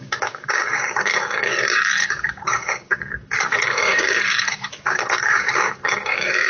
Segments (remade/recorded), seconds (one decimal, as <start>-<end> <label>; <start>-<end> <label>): 0.0-6.5 remade